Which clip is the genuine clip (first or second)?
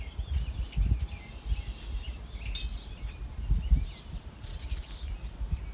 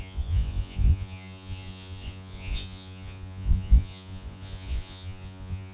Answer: first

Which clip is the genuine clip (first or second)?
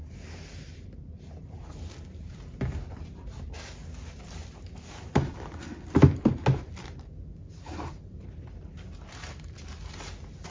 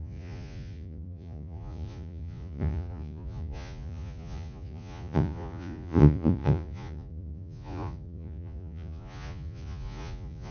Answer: first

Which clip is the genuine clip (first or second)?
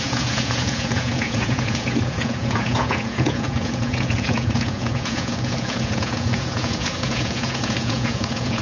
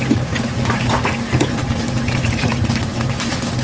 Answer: second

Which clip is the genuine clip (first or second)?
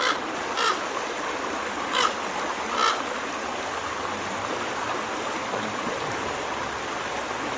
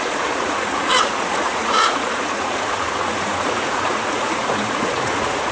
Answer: first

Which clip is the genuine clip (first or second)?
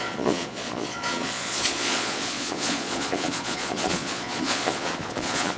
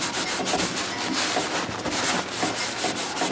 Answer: second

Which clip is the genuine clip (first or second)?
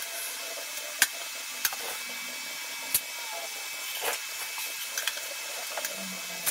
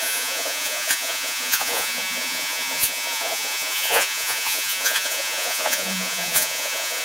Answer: first